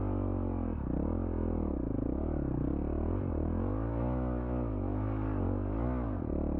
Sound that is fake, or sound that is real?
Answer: real